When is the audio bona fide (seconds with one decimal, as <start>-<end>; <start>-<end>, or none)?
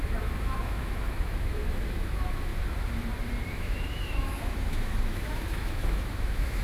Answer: 2.5-3.5